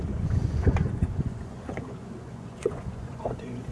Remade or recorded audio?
remade